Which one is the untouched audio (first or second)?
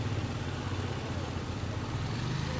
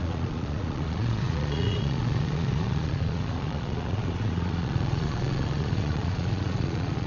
first